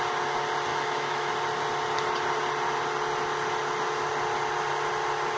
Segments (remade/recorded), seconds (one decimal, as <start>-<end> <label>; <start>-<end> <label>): 0.0-0.7 recorded; 0.7-1.3 remade; 1.3-5.4 recorded